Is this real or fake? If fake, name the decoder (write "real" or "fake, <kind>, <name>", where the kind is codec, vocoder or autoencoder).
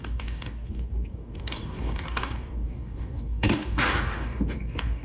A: fake, codec, DAC